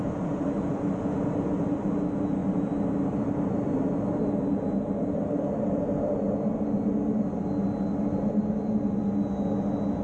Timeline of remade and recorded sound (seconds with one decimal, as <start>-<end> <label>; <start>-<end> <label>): 0.0-10.0 recorded